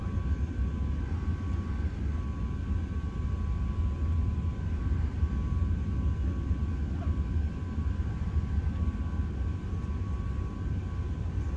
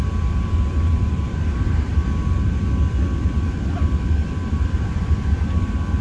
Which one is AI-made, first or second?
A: second